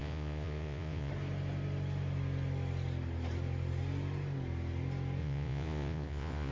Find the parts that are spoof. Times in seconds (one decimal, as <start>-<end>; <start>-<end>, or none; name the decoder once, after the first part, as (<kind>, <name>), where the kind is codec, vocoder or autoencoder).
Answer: 0.0-1.1 (vocoder, Vocos); 5.2-6.5